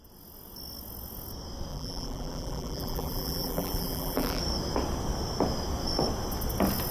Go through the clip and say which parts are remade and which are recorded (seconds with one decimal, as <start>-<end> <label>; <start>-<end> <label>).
0.0-1.7 recorded; 1.7-4.4 remade; 4.4-6.9 recorded